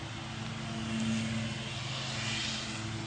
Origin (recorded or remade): recorded